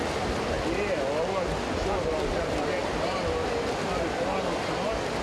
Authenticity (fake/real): real